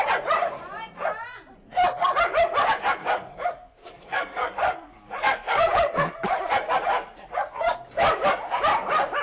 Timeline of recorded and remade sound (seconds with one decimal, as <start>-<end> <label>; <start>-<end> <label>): 0.0-3.0 recorded; 3.0-6.1 remade; 6.1-9.2 recorded